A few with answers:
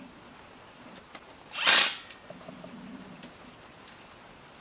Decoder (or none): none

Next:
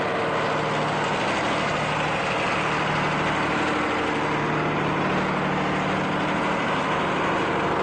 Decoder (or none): none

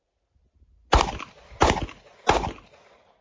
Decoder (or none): none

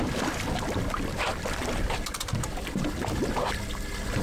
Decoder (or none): none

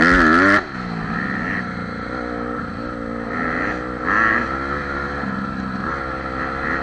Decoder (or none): none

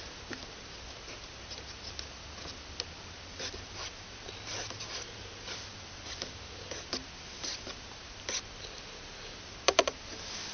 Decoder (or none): none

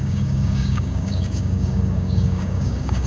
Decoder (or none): codec, DAC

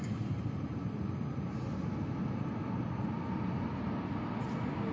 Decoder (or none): none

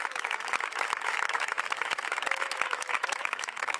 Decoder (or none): autoencoder, DAC-VAE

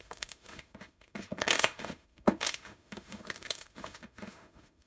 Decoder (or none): autoencoder, DAC-VAE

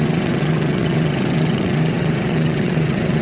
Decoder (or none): vocoder, WaveNeXt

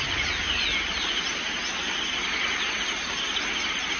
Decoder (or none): none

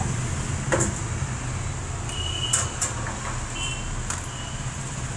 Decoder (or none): none